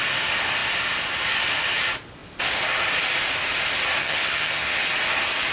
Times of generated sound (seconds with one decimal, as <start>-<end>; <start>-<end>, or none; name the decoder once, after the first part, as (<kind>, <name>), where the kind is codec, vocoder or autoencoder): 4.0-4.8 (vocoder, HiFi-GAN)